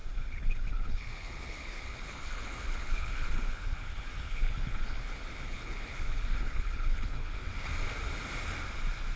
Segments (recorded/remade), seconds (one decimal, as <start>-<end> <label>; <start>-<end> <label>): 0.0-7.4 remade; 7.4-9.2 recorded